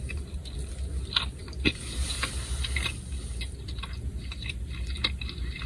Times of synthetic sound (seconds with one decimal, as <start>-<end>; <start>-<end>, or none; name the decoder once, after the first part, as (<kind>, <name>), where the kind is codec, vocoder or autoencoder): none